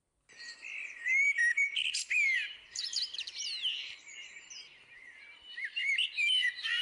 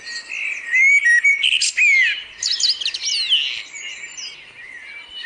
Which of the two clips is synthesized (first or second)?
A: first